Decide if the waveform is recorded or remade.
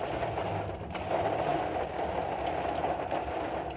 recorded